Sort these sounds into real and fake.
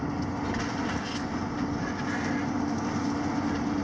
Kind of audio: real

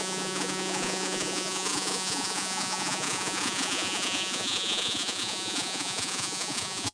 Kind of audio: fake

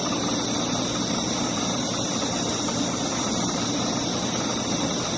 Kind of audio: real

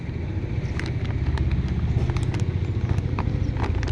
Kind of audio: real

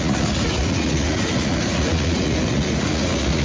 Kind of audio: fake